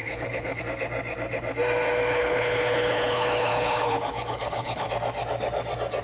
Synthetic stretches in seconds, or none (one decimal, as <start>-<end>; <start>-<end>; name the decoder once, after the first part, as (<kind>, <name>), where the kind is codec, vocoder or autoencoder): 0.0-0.6 (codec, HILCodec); 2.1-4.9

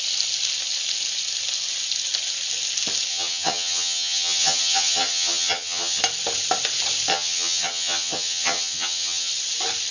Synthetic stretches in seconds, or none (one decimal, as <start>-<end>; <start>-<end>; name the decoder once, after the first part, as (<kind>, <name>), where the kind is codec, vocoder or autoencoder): 3.1-6.0 (vocoder, HiFi-GAN); 7.1-9.3

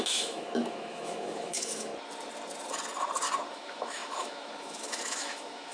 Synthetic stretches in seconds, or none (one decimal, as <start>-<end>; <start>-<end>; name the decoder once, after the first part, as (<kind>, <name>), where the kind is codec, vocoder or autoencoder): 0.0-1.9 (autoencoder, DAC-VAE); 3.5-5.7

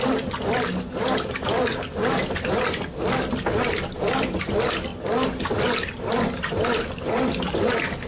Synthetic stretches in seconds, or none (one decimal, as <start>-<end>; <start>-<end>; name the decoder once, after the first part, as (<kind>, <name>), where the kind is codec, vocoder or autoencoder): none

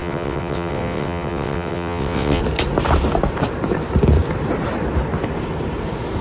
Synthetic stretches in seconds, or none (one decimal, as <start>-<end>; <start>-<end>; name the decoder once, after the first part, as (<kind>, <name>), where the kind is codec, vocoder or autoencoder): 0.0-2.4 (vocoder, WaveNeXt)